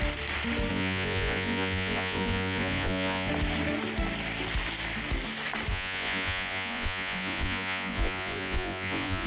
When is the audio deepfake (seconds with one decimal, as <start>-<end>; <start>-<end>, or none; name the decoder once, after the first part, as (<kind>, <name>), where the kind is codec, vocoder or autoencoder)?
0.7-3.3 (vocoder, Vocos); 5.7-9.3